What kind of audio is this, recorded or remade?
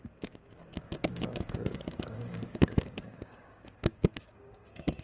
remade